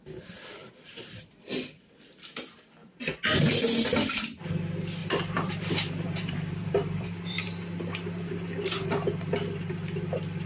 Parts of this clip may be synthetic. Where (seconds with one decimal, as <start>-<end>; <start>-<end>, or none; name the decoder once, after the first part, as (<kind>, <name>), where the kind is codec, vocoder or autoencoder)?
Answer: 0.6-1.9 (vocoder, BigVGAN v2); 2.8-3.5; 5.0-8.3